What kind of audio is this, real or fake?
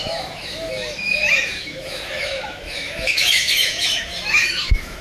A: fake